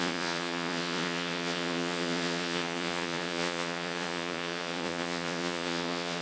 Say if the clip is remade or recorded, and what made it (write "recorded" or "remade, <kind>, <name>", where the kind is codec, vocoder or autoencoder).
remade, vocoder, Vocos